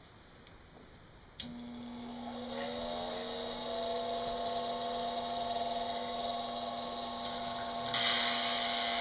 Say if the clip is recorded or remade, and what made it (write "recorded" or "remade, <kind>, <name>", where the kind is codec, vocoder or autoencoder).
recorded